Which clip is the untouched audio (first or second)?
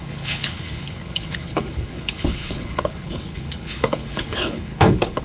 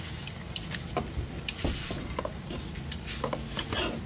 second